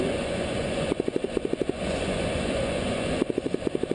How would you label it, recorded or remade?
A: remade